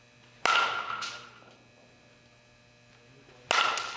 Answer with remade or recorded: recorded